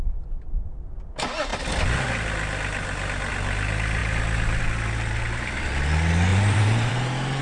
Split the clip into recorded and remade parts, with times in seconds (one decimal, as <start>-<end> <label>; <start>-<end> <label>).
0.0-6.3 recorded; 6.3-6.9 remade; 6.9-7.4 recorded